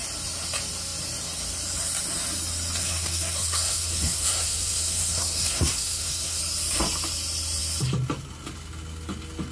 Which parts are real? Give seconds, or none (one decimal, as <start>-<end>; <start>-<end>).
0.0-2.8; 6.4-9.5